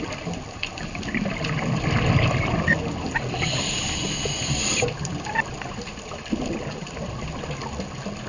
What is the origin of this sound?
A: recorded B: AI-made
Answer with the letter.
A